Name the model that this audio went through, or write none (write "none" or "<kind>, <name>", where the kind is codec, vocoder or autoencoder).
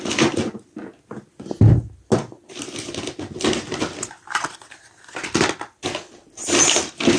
none